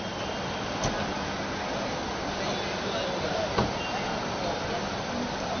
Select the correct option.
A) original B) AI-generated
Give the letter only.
A